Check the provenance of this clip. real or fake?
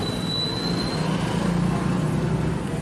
real